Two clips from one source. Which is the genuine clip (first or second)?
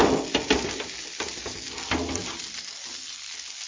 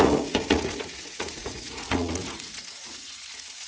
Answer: first